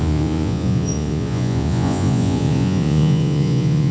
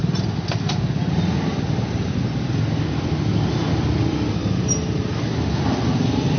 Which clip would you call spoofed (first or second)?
first